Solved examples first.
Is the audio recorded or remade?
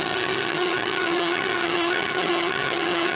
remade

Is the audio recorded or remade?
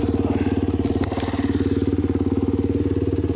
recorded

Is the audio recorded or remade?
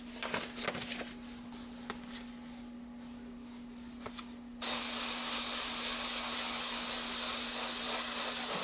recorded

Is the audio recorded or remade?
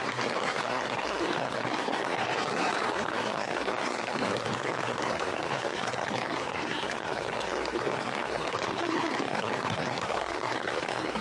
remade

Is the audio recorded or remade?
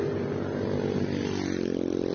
recorded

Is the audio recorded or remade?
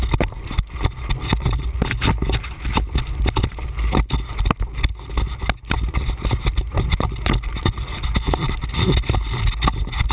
recorded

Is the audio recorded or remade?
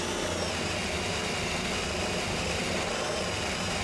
recorded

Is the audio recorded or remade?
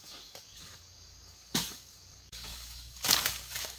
remade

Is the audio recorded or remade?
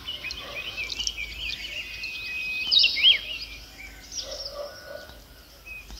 recorded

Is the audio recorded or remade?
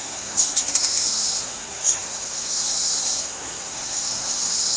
remade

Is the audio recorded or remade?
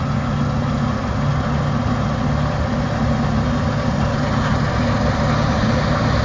recorded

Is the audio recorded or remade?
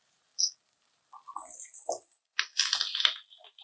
recorded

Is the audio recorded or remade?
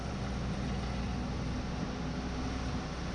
recorded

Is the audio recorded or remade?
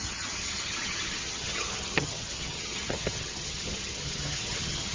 remade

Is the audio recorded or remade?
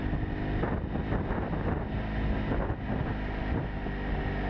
recorded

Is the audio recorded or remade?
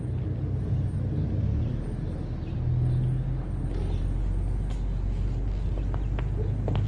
recorded